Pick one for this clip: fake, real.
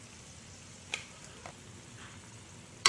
fake